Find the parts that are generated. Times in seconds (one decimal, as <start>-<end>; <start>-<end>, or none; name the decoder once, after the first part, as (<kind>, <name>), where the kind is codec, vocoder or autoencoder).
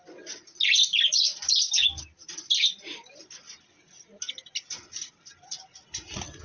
none